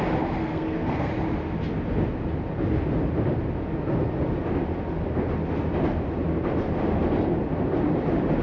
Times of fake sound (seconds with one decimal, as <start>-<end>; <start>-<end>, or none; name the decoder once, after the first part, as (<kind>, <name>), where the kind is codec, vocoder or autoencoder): 0.4-1.1 (codec, SNAC)